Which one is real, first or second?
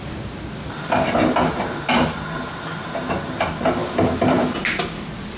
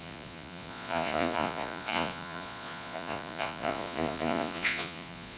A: first